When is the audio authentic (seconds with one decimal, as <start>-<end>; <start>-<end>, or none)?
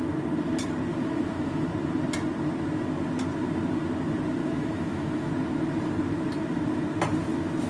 0.0-0.9; 1.7-4.4; 5.3-7.7